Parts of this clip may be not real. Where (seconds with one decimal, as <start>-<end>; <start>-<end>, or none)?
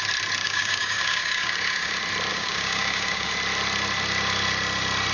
0.4-1.9; 2.3-3.3